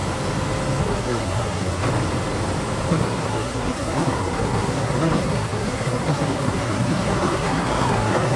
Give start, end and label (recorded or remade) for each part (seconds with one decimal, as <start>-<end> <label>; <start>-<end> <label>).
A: 0.0-0.8 recorded; 0.8-1.8 remade; 1.8-2.9 recorded; 2.9-8.4 remade